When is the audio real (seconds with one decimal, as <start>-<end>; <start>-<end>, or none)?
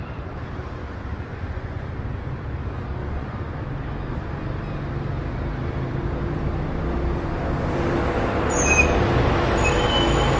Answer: 0.0-1.3; 1.9-3.0; 3.6-10.4